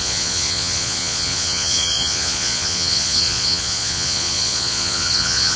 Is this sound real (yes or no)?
no